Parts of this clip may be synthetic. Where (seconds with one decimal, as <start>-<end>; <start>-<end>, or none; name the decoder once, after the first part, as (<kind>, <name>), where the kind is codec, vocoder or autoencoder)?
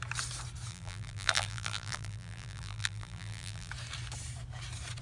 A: 0.7-3.7 (vocoder, BigVGAN v2)